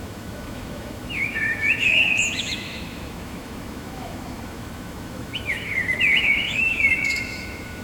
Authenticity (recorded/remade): remade